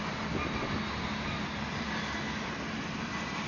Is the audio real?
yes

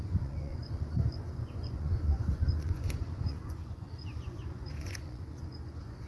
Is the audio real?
no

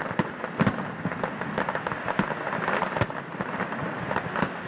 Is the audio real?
yes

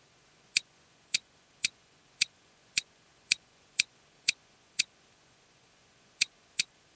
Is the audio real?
no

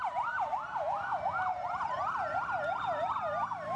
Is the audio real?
yes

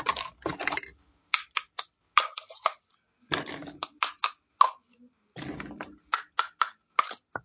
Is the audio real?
yes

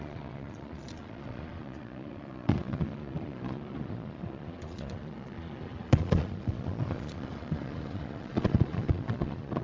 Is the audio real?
no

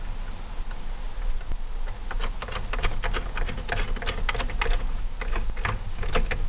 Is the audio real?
yes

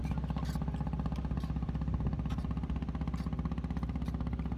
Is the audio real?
yes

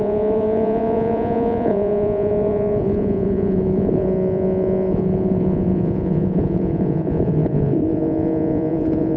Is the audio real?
no